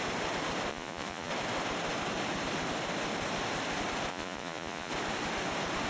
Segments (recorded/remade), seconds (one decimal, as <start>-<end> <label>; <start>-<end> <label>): 0.0-0.7 recorded; 0.7-1.3 remade; 1.3-4.1 recorded; 4.1-4.9 remade; 4.9-5.9 recorded